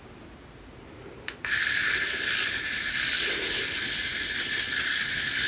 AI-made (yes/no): no